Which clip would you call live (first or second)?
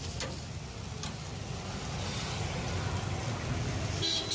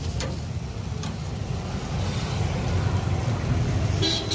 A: first